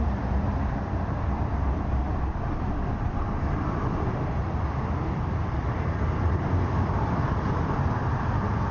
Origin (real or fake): fake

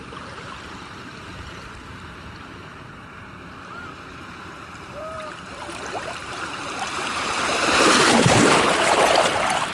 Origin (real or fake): fake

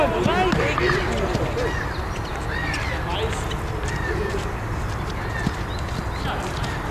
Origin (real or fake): real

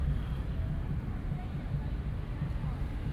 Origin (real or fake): fake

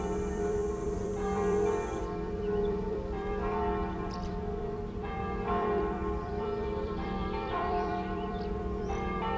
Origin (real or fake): fake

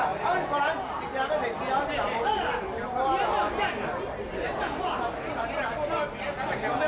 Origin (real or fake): real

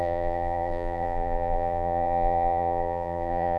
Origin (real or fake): fake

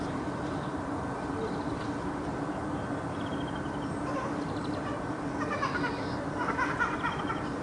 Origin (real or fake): fake